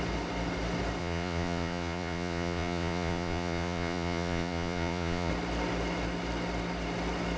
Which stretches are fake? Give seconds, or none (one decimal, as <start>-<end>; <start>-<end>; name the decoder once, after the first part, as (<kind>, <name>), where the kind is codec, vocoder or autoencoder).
1.0-5.3 (vocoder, Vocos)